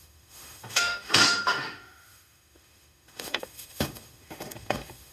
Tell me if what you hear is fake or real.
fake